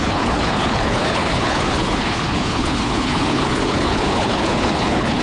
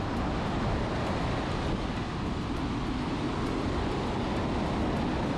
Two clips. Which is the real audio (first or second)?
second